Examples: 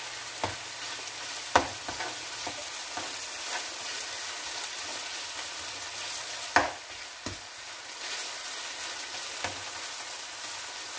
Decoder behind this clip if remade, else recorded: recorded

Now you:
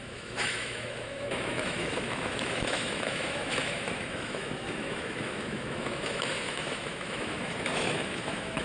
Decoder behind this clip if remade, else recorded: remade, autoencoder, DAC-VAE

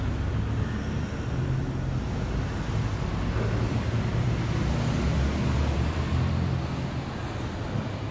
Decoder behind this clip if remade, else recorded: recorded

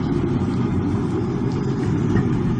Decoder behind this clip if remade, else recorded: recorded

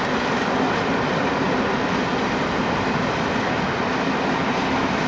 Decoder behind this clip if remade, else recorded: recorded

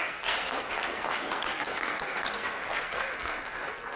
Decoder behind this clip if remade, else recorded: remade, codec, SNAC